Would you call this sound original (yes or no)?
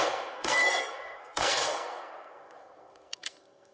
no